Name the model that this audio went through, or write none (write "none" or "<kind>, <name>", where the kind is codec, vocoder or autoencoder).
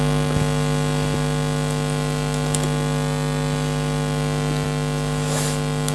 none